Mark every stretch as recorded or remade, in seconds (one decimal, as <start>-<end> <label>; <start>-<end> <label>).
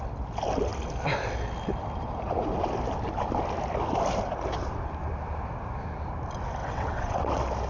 0.0-6.6 recorded; 6.6-7.3 remade; 7.3-7.7 recorded